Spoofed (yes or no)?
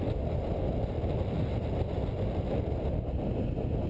no